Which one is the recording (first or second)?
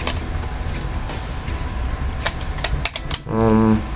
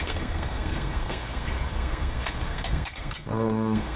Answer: first